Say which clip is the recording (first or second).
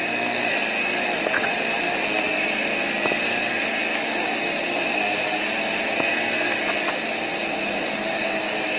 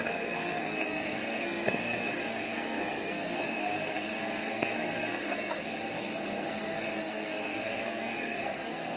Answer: first